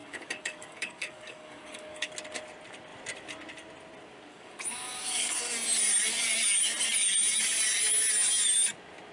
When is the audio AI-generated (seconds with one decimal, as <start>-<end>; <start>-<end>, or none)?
0.0-2.1; 4.3-5.4

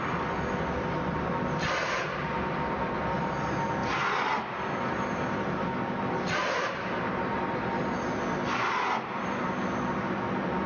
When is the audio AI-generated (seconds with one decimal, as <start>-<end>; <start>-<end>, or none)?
none

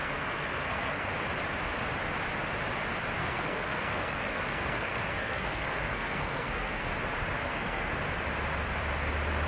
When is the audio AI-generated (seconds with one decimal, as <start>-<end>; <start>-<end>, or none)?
0.0-1.1; 3.2-6.9; 7.4-7.9

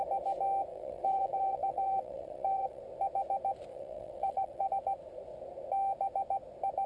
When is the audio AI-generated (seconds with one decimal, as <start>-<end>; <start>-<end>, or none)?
0.7-2.8; 3.7-4.7